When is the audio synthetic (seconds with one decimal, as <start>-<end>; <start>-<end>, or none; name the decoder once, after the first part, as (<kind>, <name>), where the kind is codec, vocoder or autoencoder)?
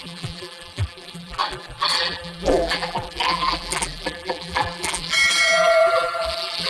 0.0-6.7 (vocoder, BigVGAN v2)